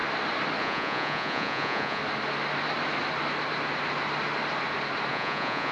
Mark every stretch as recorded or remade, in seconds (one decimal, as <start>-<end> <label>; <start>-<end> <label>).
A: 0.0-0.6 recorded; 0.6-2.0 remade; 2.0-5.1 recorded; 5.1-5.7 remade